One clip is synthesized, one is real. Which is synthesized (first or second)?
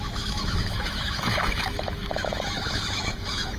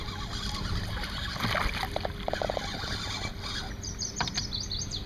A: first